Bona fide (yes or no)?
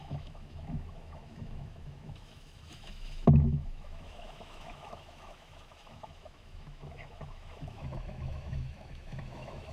no